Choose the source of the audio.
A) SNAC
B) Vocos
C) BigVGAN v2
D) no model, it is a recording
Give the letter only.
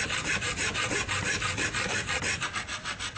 D